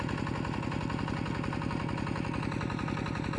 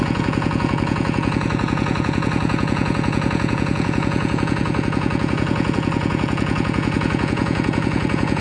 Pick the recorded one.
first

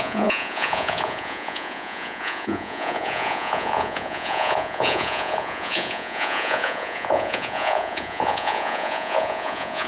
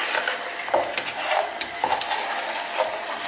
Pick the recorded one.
second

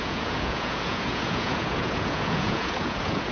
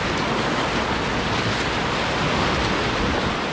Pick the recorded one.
second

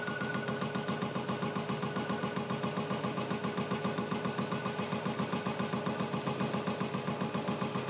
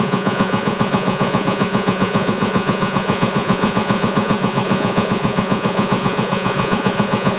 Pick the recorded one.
first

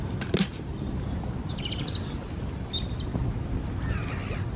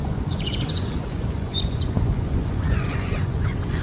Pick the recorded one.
first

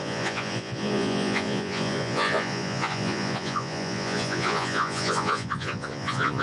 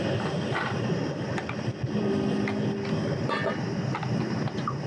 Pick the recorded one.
second